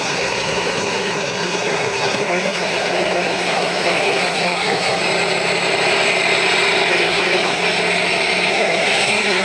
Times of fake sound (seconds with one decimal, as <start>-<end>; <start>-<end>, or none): 0.0-5.0; 6.9-7.6; 8.5-9.4